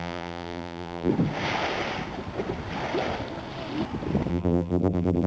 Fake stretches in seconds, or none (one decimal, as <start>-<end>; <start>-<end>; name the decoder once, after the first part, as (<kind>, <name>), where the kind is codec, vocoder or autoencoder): 0.0-1.1 (vocoder, BigVGAN v2); 4.3-5.3